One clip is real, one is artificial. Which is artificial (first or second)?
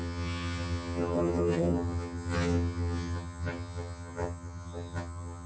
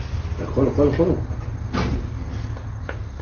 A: first